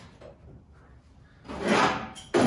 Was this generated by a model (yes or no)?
no